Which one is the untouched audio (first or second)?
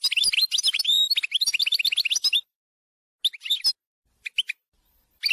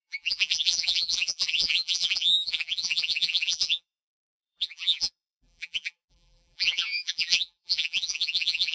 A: first